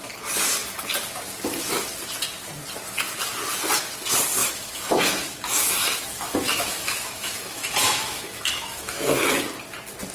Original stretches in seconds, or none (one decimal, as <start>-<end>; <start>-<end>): 0.0-4.4; 9.4-10.1